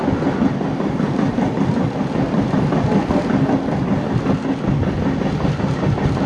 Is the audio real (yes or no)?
yes